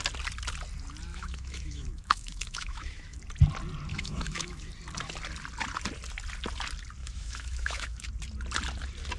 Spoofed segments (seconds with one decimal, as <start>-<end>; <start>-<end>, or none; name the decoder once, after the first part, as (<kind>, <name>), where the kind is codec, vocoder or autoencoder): 1.1-3.2 (autoencoder, DAC-VAE); 3.9-4.7; 7.0-8.1